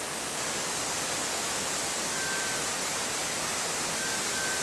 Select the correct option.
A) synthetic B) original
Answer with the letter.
B